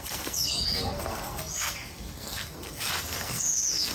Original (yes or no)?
no